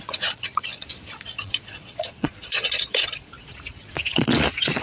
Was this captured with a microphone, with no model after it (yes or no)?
no